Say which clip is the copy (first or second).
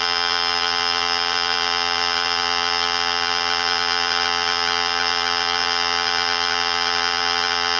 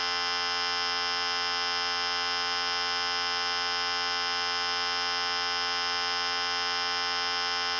first